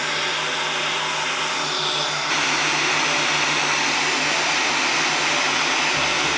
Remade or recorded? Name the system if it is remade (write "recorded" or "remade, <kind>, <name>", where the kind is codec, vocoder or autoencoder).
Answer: recorded